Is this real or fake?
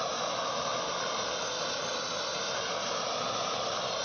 real